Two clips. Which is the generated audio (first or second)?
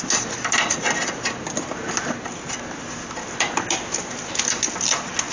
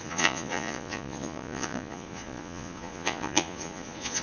second